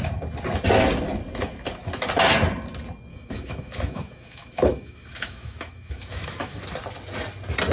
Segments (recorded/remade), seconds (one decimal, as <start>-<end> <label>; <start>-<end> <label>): 0.0-3.1 recorded; 3.1-6.6 remade; 6.6-7.7 recorded